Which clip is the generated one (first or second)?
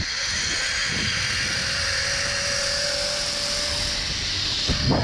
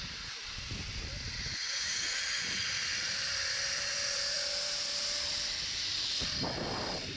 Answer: second